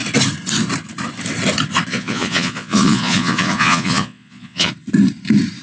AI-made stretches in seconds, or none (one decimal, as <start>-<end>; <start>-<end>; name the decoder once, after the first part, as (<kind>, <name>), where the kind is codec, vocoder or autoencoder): 1.9-4.7 (vocoder, Vocos)

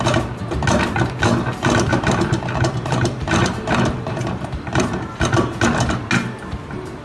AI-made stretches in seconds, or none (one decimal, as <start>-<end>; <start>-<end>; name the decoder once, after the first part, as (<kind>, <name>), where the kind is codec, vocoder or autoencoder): 1.9-4.9 (vocoder, BigVGAN v2)

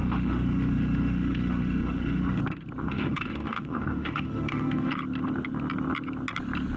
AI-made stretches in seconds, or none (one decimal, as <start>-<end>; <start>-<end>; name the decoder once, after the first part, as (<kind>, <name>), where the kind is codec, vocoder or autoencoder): 0.0-2.4 (autoencoder, DAC-VAE); 2.8-4.9

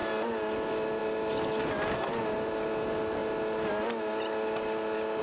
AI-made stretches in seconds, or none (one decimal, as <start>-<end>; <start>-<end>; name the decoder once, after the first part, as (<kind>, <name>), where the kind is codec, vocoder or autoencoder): none

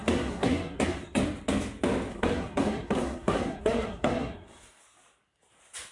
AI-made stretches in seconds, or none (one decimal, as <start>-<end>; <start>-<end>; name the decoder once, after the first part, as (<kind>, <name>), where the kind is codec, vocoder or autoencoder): 0.0-1.2 (codec, SNAC); 2.1-4.8

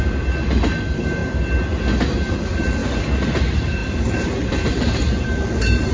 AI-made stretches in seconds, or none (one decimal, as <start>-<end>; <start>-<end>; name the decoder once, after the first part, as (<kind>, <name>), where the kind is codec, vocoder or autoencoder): 0.0-1.2 (vocoder, BigVGAN v2); 2.3-2.8; 3.4-5.9

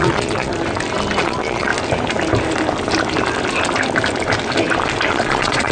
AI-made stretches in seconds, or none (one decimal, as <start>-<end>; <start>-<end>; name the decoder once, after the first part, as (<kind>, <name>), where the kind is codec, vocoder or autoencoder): 0.0-0.5 (vocoder, Vocos); 1.2-1.7; 5.1-5.7